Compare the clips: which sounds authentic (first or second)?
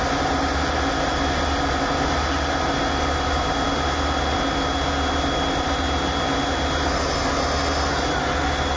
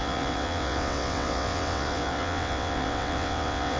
first